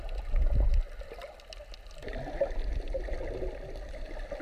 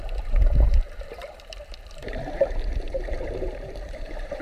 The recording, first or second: first